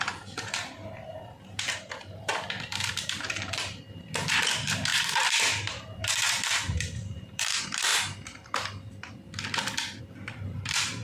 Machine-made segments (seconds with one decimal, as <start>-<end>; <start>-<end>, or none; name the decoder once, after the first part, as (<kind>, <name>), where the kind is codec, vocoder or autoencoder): 0.0-2.3 (vocoder, BigVGAN v2); 2.9-7.9; 10.0-11.0